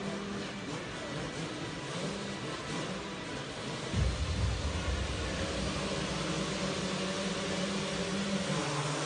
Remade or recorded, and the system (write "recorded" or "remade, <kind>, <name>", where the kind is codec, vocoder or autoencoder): recorded